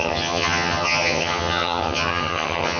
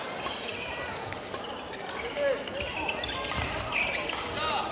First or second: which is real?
second